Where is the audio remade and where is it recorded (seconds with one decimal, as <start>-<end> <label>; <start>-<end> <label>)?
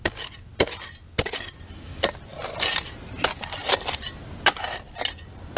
0.0-5.6 recorded